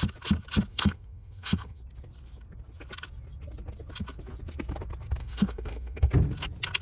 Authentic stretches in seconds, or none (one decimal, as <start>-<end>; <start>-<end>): 0.0-0.7; 1.8-5.2; 6.1-6.8